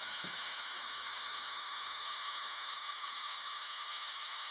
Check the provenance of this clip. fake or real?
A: fake